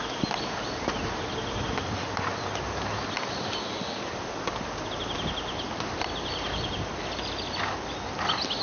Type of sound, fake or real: real